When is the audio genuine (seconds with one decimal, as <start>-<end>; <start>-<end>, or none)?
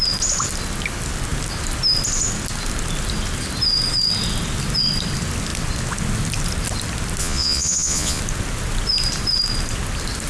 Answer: 0.0-7.2; 8.2-10.3